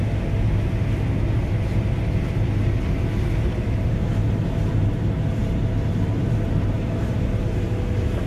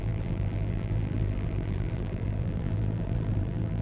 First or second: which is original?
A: first